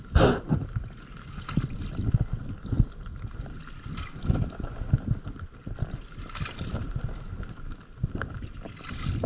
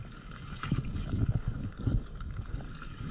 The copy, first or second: second